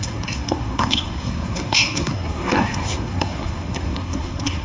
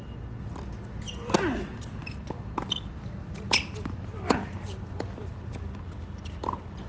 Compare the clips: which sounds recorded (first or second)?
second